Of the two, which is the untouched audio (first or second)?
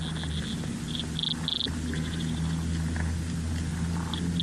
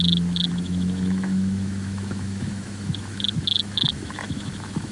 first